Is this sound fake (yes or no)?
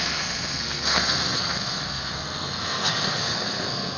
yes